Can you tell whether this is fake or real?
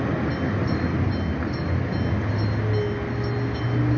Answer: real